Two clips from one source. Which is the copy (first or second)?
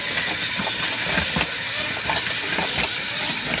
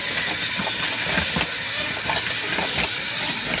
first